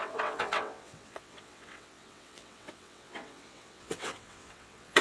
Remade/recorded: remade